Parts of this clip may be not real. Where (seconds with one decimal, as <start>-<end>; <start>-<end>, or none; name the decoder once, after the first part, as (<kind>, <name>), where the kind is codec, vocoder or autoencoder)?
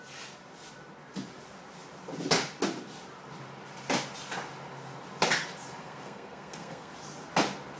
5.8-6.9 (codec, SNAC)